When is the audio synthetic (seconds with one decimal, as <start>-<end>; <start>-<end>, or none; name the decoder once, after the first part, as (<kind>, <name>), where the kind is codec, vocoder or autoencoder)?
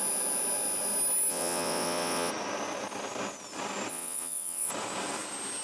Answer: 1.3-2.3 (vocoder, WaveNeXt); 3.9-4.7